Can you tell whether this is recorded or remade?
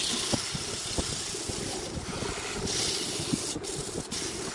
recorded